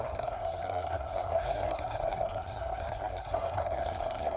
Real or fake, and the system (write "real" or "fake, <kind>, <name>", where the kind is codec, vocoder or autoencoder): fake, codec, SNAC